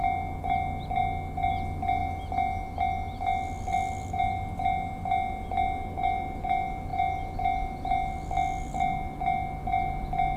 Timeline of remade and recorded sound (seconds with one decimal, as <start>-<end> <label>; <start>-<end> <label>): 0.0-10.4 recorded